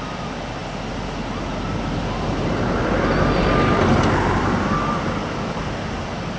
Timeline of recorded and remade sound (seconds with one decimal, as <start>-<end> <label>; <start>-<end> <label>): 0.0-6.4 recorded

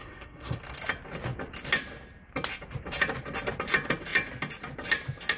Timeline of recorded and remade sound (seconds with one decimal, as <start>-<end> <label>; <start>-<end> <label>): 0.0-0.6 remade; 0.6-5.4 recorded